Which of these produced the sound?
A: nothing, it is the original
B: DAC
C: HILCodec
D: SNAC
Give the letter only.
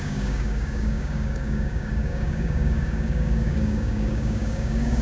B